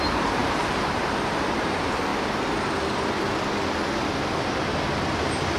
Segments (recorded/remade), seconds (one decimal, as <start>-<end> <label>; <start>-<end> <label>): 0.0-2.1 remade; 2.1-5.6 recorded